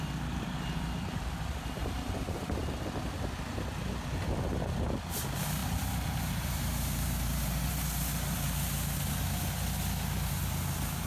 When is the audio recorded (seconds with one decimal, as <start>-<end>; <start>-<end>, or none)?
0.0-1.8; 2.6-5.6; 7.7-11.1